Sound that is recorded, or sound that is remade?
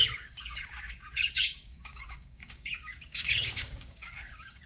remade